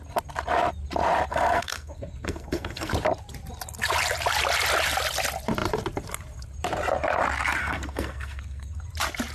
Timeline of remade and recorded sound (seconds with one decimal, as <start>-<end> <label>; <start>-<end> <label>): 0.0-1.3 recorded; 1.3-2.9 remade; 2.9-7.6 recorded; 7.6-8.8 remade; 8.8-9.3 recorded